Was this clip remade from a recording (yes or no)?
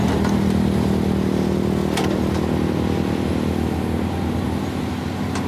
no